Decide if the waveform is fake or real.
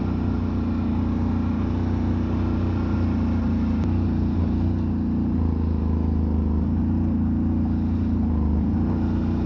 real